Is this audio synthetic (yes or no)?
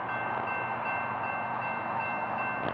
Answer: no